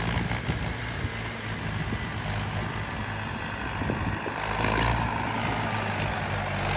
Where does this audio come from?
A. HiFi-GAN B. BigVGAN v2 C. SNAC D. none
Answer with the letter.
D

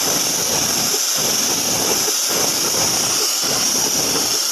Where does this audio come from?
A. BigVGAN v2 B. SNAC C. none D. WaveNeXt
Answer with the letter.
A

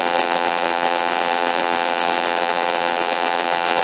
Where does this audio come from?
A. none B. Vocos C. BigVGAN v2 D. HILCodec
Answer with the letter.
C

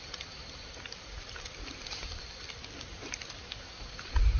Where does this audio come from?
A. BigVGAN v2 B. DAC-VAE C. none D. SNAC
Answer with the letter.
C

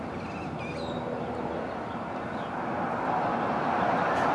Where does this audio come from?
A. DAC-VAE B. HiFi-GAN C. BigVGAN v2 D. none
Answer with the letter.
D